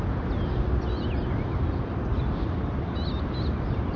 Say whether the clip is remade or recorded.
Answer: recorded